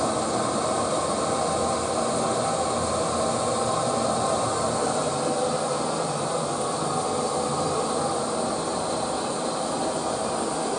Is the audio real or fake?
real